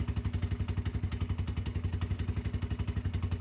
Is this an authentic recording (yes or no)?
yes